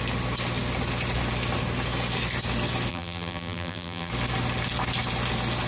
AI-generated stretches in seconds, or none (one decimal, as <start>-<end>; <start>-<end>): 2.9-4.1